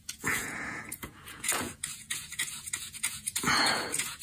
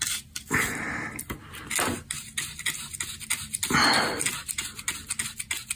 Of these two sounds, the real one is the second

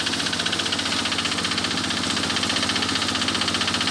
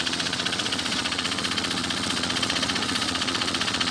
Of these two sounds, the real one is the first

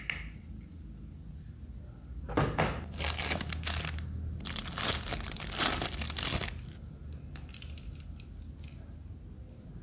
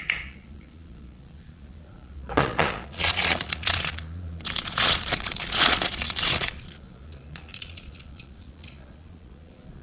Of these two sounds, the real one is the first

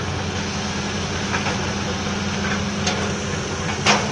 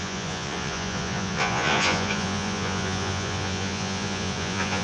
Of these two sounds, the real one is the first